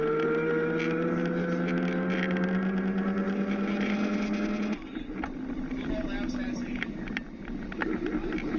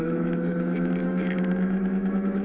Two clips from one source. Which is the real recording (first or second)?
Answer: first